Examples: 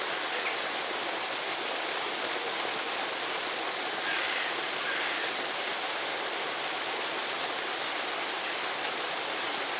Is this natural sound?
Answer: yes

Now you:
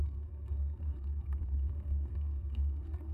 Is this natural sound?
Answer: no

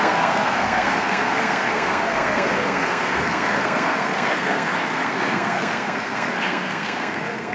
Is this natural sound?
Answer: no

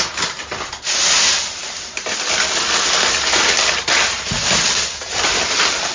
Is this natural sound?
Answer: no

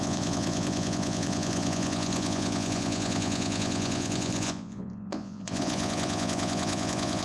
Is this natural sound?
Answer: no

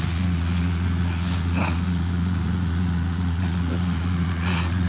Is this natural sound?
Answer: no